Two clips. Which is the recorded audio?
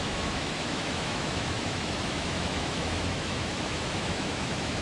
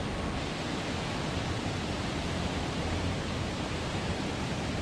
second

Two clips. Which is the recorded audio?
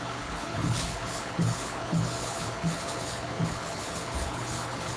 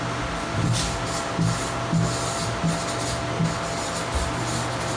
second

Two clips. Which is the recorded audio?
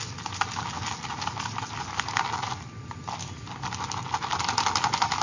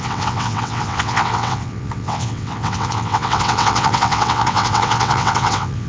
first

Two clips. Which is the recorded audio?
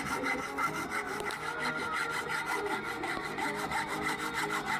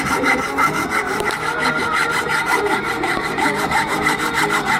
first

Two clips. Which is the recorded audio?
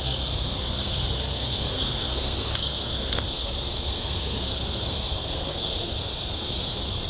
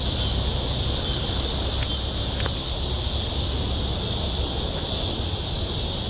second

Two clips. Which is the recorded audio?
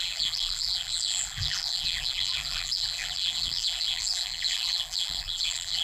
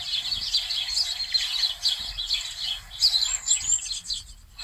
second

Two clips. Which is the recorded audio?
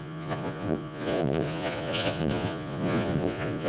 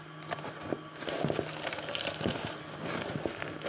second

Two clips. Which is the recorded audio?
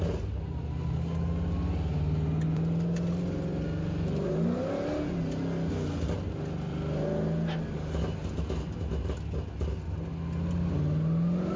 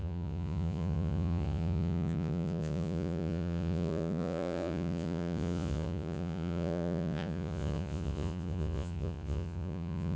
first